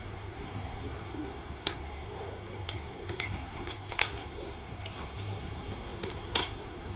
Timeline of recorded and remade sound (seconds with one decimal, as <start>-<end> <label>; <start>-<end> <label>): 0.0-7.0 remade